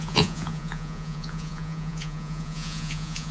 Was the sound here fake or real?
fake